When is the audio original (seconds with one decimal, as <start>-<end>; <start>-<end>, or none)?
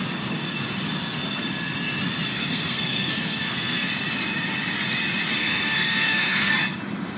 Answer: 0.0-2.3; 3.9-5.4; 6.5-7.2